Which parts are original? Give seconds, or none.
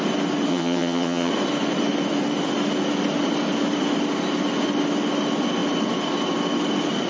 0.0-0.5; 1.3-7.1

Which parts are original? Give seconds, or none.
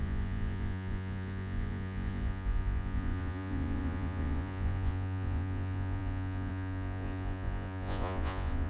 none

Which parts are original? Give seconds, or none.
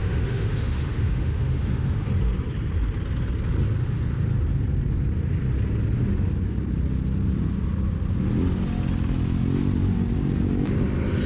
2.1-11.3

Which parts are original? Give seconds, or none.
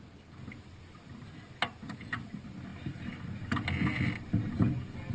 0.0-5.1